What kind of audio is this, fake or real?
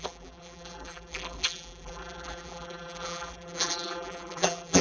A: fake